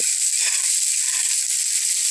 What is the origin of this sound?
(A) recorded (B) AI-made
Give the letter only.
A